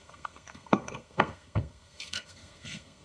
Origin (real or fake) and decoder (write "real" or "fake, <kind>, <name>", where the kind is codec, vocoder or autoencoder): fake, codec, SNAC